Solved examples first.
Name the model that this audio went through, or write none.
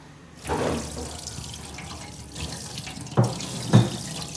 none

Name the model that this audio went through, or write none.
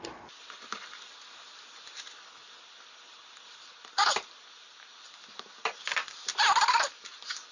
none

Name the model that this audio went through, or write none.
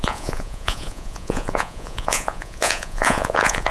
vocoder, Vocos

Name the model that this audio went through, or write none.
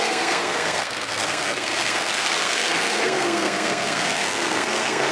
codec, SNAC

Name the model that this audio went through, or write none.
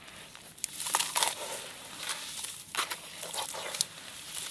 none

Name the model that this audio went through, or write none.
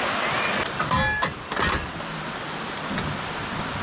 none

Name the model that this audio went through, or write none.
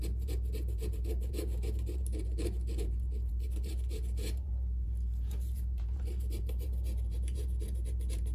vocoder, BigVGAN v2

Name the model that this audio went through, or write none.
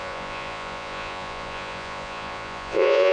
vocoder, Vocos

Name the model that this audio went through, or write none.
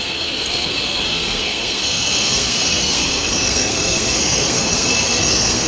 codec, SNAC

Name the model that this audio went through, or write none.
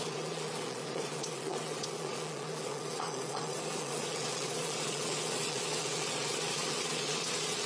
vocoder, Vocos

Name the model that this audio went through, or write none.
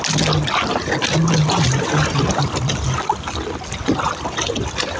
none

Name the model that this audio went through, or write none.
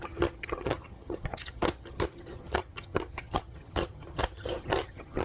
vocoder, HiFi-GAN